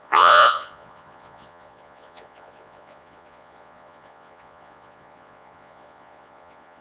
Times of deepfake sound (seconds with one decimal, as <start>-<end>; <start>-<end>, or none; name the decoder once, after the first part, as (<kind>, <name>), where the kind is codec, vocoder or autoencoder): 0.0-6.8 (vocoder, Vocos)